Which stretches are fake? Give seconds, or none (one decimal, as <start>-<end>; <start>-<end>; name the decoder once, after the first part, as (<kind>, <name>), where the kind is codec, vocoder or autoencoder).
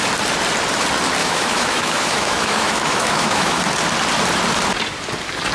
1.2-3.6 (autoencoder, DAC-VAE)